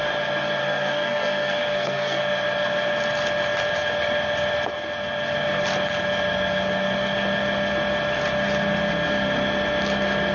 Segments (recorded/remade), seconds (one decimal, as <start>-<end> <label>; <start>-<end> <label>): 0.0-0.6 recorded; 0.6-2.2 remade; 2.2-10.3 recorded